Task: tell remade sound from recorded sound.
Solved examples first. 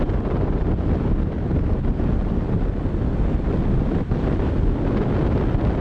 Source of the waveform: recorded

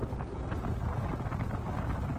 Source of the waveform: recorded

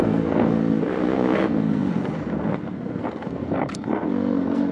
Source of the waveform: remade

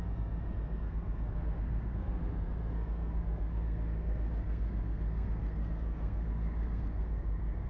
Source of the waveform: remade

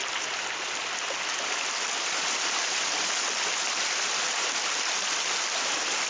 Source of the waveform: recorded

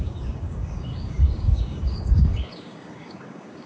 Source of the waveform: remade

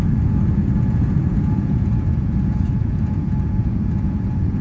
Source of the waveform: remade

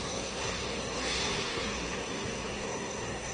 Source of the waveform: remade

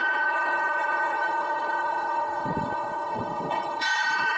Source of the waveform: remade